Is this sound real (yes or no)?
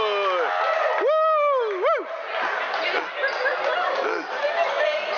yes